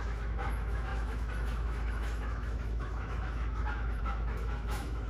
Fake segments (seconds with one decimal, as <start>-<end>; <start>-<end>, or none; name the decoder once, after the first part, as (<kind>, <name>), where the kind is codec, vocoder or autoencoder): 0.0-5.1 (autoencoder, DAC-VAE)